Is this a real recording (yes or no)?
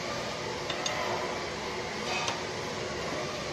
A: yes